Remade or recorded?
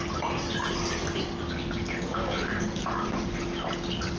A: recorded